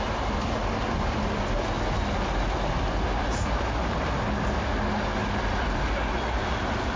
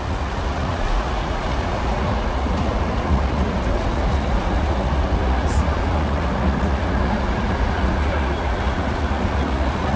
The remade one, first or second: second